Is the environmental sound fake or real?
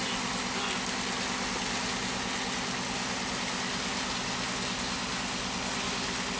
real